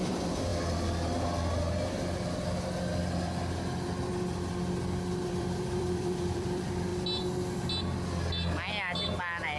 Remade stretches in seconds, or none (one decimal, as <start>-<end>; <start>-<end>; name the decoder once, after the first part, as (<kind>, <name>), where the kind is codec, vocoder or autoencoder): 0.0-0.5 (vocoder, BigVGAN v2); 5.3-6.9